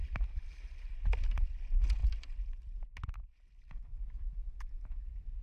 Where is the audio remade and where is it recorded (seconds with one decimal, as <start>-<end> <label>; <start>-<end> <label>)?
0.0-1.5 remade; 1.5-2.0 recorded; 2.0-2.8 remade; 2.8-3.9 recorded; 3.9-4.8 remade; 4.8-5.4 recorded